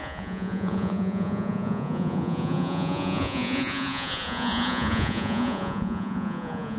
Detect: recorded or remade remade